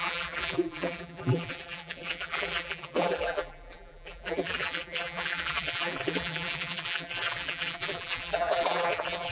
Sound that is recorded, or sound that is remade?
remade